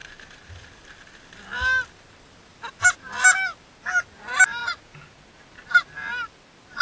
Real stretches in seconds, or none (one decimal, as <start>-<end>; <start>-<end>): 0.0-4.6; 5.2-6.8